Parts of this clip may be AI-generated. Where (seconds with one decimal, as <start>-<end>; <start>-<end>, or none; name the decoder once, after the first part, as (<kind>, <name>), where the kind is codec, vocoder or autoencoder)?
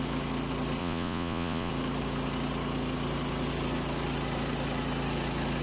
0.8-1.7 (vocoder, Vocos)